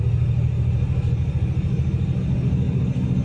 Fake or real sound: real